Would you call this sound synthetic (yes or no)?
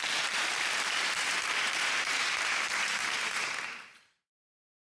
yes